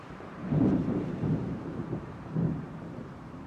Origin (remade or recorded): remade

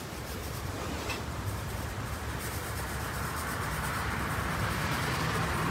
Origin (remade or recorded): remade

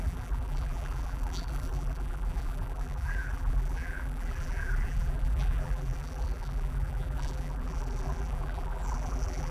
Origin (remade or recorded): remade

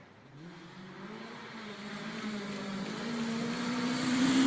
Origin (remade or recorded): recorded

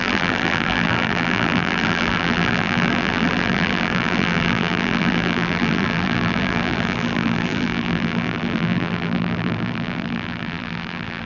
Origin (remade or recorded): remade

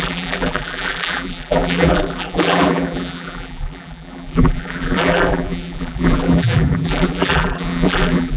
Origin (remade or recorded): remade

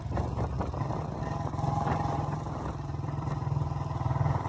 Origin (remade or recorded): remade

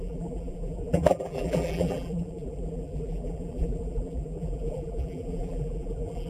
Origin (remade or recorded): remade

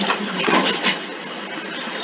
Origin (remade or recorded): recorded